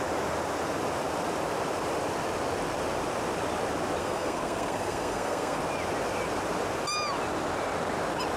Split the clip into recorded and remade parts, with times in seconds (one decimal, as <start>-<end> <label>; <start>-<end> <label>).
0.0-4.0 recorded; 4.0-5.6 remade; 5.6-8.4 recorded